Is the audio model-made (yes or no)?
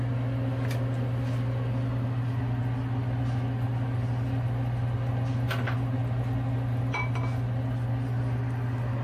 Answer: no